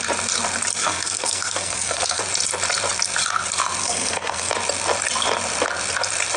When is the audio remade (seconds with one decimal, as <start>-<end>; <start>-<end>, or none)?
0.8-2.2; 3.8-4.5